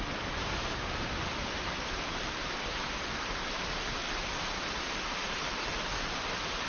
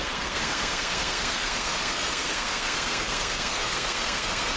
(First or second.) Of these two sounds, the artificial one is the second